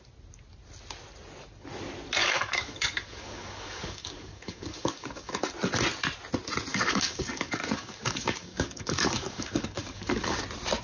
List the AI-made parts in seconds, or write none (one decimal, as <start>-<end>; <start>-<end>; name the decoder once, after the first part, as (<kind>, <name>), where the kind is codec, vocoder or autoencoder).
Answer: 2.2-5.5 (codec, DAC); 6.7-10.4